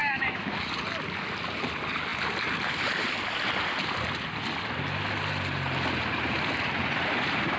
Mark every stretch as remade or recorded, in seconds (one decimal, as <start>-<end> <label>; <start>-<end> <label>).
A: 0.0-0.7 remade; 0.7-7.6 recorded